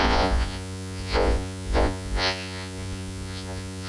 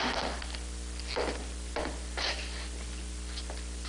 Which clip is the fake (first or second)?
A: first